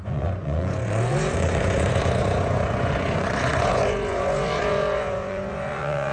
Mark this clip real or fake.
fake